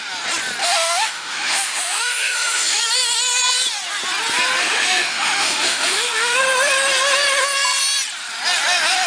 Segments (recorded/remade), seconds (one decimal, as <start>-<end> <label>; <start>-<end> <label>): 0.0-0.6 recorded; 0.6-2.8 remade; 2.8-4.6 recorded; 4.6-6.4 remade; 6.4-9.1 recorded